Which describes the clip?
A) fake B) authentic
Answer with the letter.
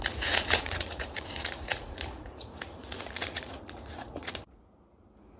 A